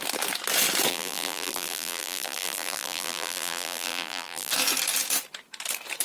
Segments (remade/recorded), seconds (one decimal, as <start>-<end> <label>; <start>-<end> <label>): 0.0-0.9 recorded; 0.9-4.5 remade; 4.5-6.0 recorded